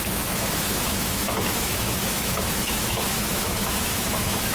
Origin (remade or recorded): remade